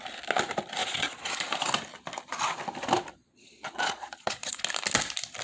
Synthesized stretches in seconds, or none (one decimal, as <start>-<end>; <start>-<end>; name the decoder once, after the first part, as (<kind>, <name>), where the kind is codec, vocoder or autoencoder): 0.8-1.3 (vocoder, Vocos); 3.2-4.6